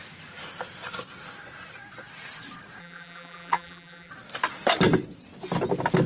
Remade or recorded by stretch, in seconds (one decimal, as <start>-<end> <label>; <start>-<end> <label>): 0.0-2.8 recorded; 2.8-4.1 remade; 4.1-6.1 recorded